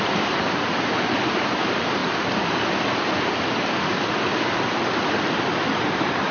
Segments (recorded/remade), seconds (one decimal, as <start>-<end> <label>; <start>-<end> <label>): 0.0-2.0 remade; 2.0-5.8 recorded; 5.8-6.3 remade